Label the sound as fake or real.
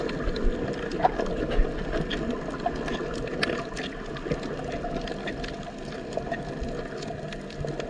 real